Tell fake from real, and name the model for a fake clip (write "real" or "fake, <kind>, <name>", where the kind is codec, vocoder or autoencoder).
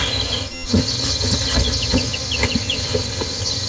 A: fake, vocoder, HiFi-GAN